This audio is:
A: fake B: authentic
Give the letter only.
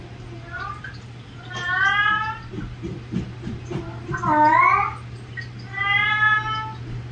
B